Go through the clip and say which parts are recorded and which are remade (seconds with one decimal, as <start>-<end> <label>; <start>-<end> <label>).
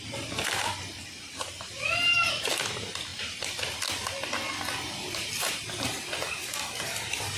0.0-1.0 recorded; 1.0-2.3 remade; 2.3-7.4 recorded